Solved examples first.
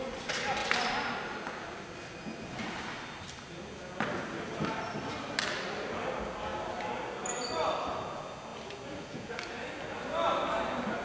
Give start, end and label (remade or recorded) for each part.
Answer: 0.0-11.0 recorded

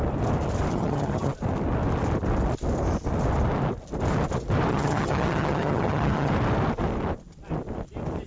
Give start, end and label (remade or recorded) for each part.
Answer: 0.0-0.7 recorded; 0.7-1.3 remade; 1.3-4.7 recorded; 4.7-6.3 remade; 6.3-8.3 recorded

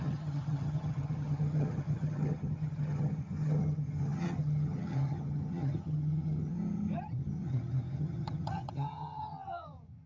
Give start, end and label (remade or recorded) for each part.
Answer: 0.0-10.1 remade

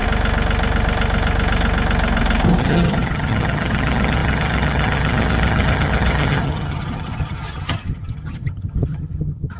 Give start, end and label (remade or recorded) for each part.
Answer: 0.0-2.6 recorded; 2.6-9.6 remade

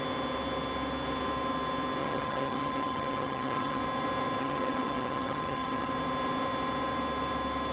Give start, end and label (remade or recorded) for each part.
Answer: 0.0-2.0 recorded; 2.0-3.8 remade; 3.8-4.4 recorded; 4.4-5.9 remade; 5.9-7.7 recorded